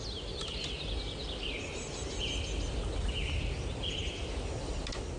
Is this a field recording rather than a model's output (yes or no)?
yes